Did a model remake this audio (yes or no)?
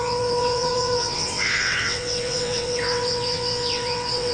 yes